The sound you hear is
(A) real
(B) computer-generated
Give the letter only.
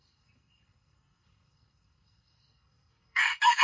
B